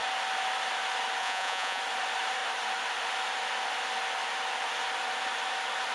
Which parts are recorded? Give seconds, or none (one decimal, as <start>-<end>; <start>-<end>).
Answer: 0.0-1.2; 1.8-5.9